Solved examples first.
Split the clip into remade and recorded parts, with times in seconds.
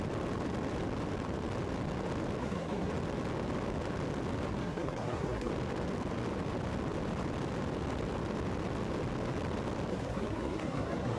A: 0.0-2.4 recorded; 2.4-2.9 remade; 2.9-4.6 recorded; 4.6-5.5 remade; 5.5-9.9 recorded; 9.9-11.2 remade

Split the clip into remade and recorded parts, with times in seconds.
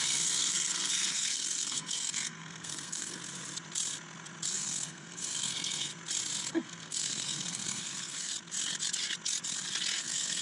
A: 0.0-3.2 remade; 3.2-4.5 recorded; 4.5-5.9 remade; 5.9-6.5 recorded; 6.5-8.3 remade; 8.3-10.0 recorded; 10.0-10.4 remade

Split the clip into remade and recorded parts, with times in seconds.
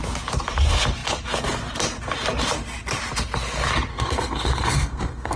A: 0.0-3.9 recorded; 3.9-5.4 remade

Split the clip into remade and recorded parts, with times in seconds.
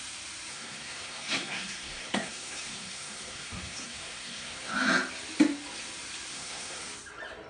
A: 0.0-0.5 recorded; 0.5-4.7 remade; 4.7-6.3 recorded; 6.3-6.8 remade; 6.8-7.5 recorded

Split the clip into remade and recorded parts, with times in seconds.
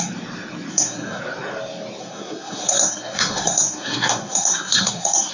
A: 0.0-0.7 recorded; 0.7-1.2 remade; 1.2-2.0 recorded; 2.0-5.3 remade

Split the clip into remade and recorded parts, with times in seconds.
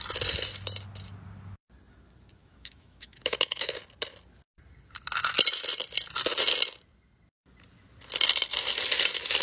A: 0.0-2.4 recorded; 2.4-3.8 remade; 3.8-9.4 recorded